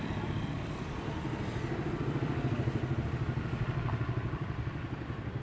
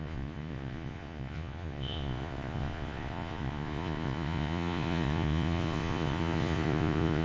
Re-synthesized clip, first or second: second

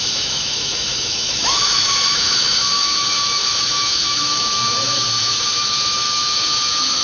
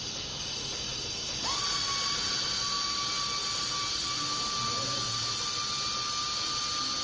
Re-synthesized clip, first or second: first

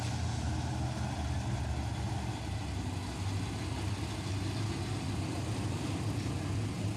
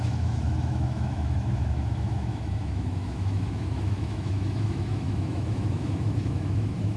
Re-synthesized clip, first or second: second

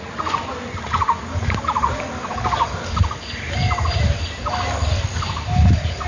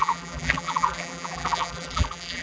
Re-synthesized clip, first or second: second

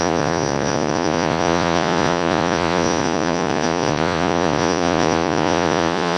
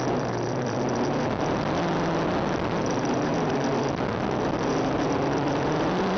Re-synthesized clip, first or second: first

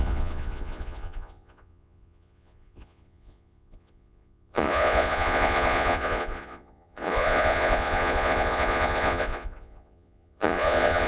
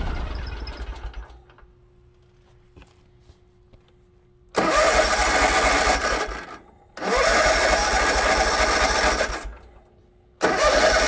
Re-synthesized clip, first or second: first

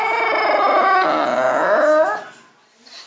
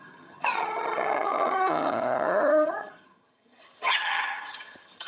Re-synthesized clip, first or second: second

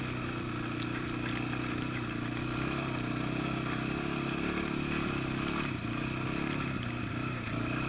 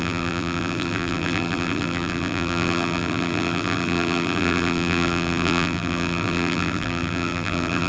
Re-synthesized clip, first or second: second